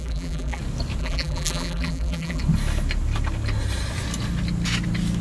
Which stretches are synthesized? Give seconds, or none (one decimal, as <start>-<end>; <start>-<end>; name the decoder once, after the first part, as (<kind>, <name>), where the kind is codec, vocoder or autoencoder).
0.0-0.6 (vocoder, BigVGAN v2); 1.0-2.4